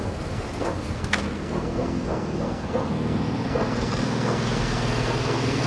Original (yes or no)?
no